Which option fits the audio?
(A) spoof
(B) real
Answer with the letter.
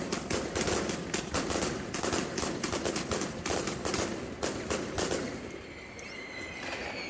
B